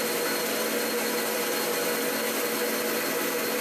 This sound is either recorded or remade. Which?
recorded